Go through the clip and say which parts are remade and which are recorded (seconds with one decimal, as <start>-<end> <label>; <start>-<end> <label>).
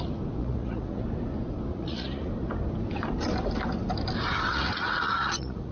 0.0-0.4 recorded; 0.4-1.0 remade; 1.0-1.7 recorded; 1.7-2.3 remade; 2.3-4.5 recorded; 4.5-5.7 remade